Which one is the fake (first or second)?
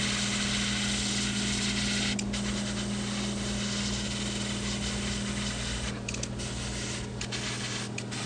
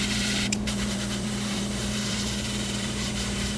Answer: second